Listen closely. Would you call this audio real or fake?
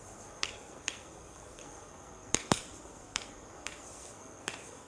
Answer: fake